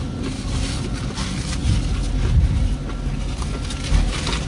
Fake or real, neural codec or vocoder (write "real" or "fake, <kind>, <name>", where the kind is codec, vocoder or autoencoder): real